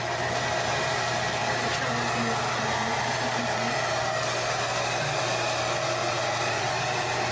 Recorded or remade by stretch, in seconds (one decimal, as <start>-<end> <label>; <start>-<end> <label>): 0.0-6.0 recorded; 6.0-6.7 remade; 6.7-7.3 recorded